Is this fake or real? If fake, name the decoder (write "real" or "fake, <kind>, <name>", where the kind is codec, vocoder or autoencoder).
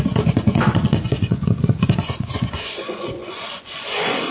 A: fake, vocoder, Vocos